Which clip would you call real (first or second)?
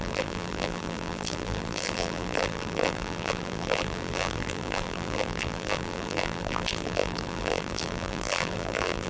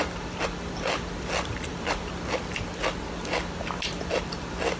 second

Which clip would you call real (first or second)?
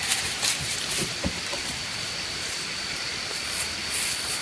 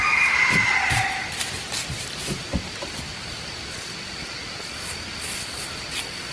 second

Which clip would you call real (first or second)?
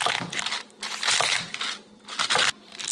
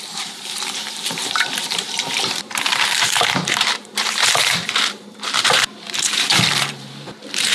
first